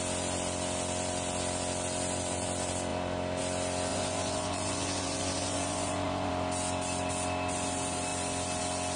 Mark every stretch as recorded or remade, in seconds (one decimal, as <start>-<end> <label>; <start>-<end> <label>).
0.0-3.9 recorded; 3.9-6.3 remade; 6.3-9.0 recorded